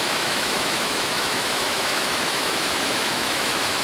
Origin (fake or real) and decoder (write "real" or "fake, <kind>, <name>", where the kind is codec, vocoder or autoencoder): fake, autoencoder, DAC-VAE